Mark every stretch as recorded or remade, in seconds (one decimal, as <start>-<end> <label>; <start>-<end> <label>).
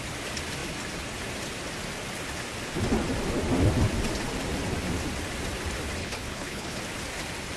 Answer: 0.0-6.0 recorded; 6.0-6.8 remade; 6.8-7.6 recorded